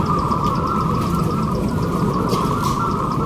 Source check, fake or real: fake